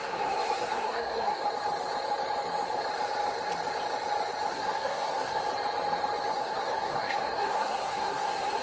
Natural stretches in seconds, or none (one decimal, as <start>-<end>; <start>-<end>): 1.4-4.5; 5.4-6.3